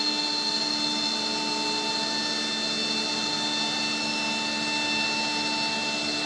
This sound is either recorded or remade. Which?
recorded